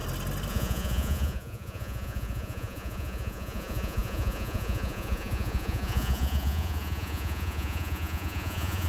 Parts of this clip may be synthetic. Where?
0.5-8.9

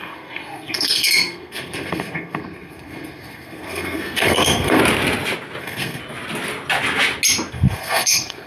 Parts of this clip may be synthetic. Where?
0.0-4.8; 5.6-6.0; 7.5-8.5

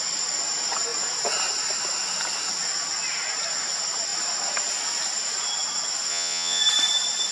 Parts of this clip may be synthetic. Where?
6.1-6.6

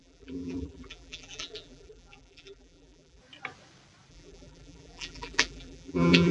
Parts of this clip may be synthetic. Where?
0.0-3.2; 4.1-6.3